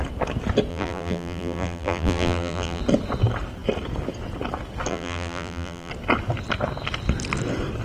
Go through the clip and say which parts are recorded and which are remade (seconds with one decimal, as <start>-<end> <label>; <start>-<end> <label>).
0.0-0.7 recorded; 0.7-2.8 remade; 2.8-4.9 recorded; 4.9-5.9 remade; 5.9-7.8 recorded